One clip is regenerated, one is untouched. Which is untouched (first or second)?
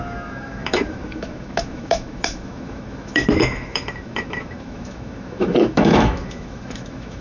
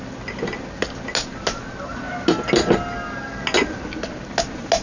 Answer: second